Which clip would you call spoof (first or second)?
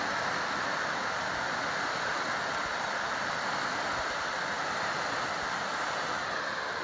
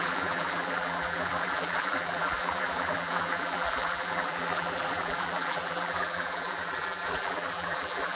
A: second